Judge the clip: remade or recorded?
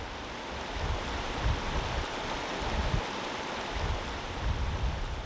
recorded